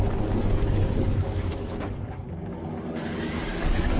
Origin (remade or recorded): remade